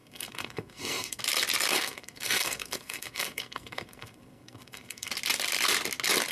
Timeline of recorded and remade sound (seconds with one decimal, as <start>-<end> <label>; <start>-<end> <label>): 0.0-1.2 remade; 1.2-1.7 recorded; 1.7-5.1 remade; 5.1-6.3 recorded